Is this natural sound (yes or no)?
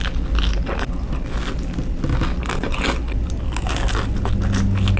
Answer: yes